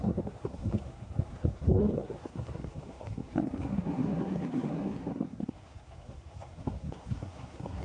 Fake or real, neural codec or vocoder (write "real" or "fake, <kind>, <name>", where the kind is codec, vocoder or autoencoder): fake, codec, SNAC